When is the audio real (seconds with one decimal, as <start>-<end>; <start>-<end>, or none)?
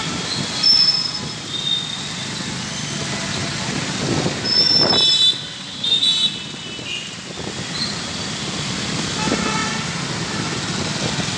0.0-11.4